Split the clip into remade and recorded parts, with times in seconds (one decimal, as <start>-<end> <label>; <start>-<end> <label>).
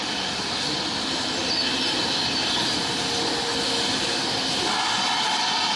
0.0-5.8 recorded